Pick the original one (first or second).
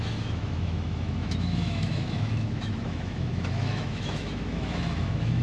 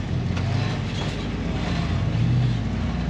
second